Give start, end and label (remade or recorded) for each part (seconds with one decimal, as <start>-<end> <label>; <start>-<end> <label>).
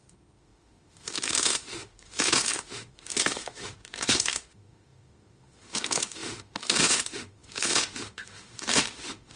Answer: 0.0-9.4 remade